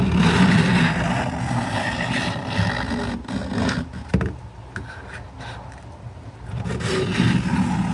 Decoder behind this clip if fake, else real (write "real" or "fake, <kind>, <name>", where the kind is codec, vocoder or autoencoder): real